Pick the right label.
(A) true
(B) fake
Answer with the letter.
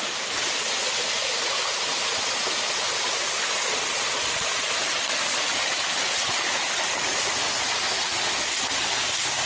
A